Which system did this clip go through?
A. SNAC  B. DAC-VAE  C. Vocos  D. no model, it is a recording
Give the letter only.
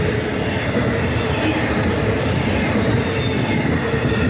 D